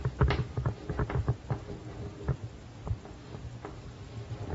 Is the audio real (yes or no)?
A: yes